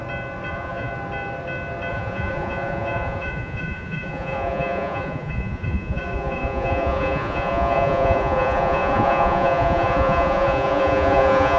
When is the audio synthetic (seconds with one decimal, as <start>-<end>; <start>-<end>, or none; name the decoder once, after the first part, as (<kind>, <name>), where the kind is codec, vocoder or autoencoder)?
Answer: 0.5-0.9 (vocoder, Vocos); 1.9-11.6